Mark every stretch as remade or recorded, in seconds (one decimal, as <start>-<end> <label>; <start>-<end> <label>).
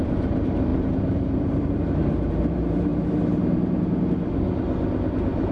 0.0-2.9 remade; 2.9-5.1 recorded; 5.1-5.5 remade